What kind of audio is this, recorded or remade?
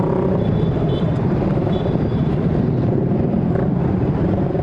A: remade